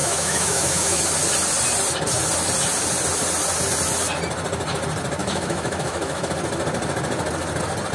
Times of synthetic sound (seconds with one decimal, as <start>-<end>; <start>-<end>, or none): 0.0-1.0; 5.2-6.3